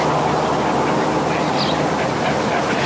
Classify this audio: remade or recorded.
recorded